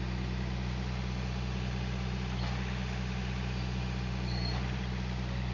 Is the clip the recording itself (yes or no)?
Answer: yes